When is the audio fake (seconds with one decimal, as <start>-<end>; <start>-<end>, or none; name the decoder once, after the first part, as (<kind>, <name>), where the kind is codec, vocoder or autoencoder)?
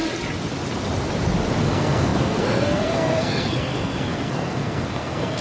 1.6-5.4 (codec, SNAC)